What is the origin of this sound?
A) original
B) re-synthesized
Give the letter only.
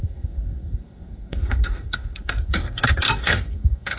B